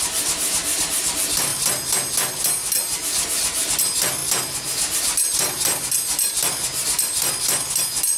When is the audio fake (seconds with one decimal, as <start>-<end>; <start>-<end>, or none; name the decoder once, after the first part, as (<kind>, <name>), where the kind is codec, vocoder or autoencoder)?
none